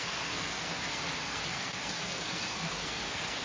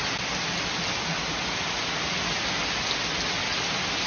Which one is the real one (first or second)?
second